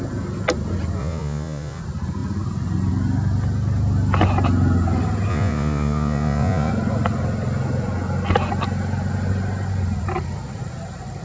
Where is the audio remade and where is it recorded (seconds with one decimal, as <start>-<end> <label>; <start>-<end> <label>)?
0.0-1.0 recorded; 1.0-1.8 remade; 1.8-5.3 recorded; 5.3-6.7 remade; 6.7-11.2 recorded